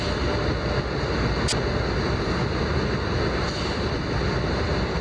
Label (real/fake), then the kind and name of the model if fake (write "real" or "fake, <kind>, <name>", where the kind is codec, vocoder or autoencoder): real